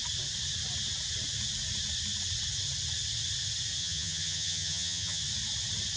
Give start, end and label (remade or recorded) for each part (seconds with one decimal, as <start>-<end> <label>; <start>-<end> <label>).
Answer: 0.0-3.8 recorded; 3.8-5.2 remade; 5.2-6.0 recorded